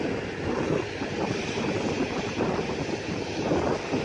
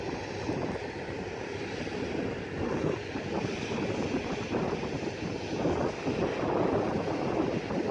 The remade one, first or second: first